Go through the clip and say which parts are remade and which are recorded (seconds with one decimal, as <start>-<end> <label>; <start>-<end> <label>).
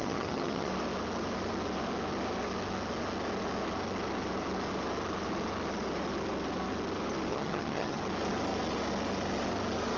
0.0-0.7 remade; 0.7-7.3 recorded; 7.3-8.0 remade; 8.0-10.0 recorded